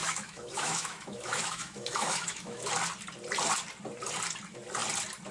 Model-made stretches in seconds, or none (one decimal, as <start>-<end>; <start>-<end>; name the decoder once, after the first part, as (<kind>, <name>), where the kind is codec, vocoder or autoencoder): 0.0-2.7 (autoencoder, DAC-VAE)